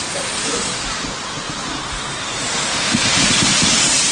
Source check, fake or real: real